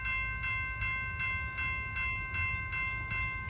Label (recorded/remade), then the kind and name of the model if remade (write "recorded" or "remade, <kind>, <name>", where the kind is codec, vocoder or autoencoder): recorded